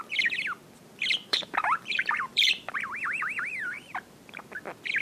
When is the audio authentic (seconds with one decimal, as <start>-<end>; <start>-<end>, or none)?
0.0-1.3; 4.3-5.0